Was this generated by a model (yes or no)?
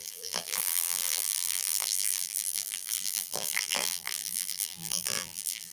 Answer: yes